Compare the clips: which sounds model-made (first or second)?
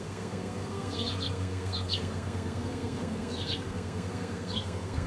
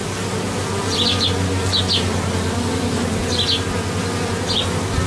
first